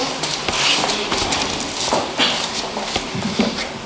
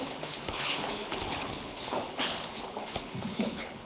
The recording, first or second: first